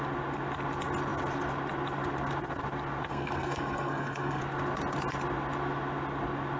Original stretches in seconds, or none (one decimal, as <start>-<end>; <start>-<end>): 0.0-3.1; 4.4-6.6